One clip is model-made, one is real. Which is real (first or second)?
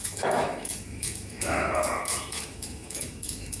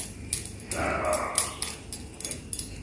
second